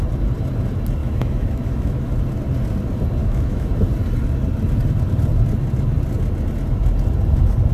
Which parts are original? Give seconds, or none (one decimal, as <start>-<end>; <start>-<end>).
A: 0.0-1.0; 2.2-3.2; 3.7-7.7